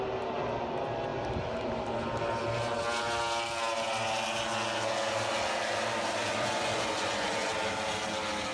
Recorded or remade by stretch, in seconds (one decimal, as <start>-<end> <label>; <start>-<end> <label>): 0.0-6.2 recorded; 6.2-7.5 remade; 7.5-8.5 recorded